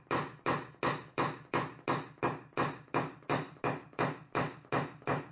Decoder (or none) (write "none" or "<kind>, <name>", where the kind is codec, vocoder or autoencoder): none